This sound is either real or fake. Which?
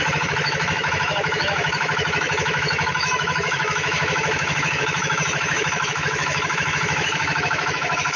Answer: fake